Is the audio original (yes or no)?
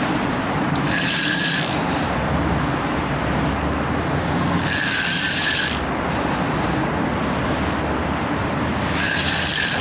yes